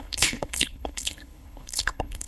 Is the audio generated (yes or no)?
yes